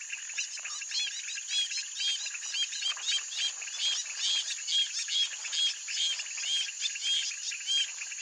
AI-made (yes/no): no